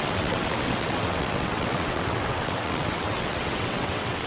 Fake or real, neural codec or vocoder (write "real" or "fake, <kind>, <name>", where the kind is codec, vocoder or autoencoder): fake, vocoder, WaveNeXt